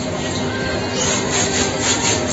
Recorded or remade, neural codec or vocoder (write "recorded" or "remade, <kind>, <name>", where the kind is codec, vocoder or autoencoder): recorded